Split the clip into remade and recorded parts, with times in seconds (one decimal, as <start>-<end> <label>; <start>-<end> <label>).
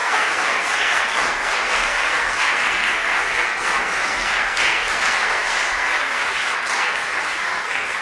0.0-8.0 remade